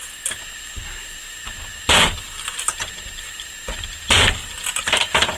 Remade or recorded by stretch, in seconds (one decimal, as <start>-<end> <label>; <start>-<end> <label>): 0.0-5.4 recorded